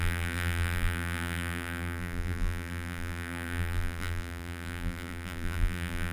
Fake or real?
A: fake